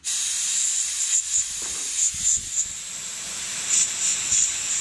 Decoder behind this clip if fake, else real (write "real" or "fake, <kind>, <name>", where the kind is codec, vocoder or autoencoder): real